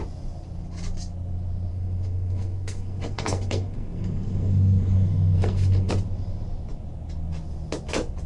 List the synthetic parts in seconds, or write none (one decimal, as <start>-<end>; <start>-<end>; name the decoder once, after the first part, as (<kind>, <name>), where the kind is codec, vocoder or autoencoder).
1.7-5.9 (codec, SNAC)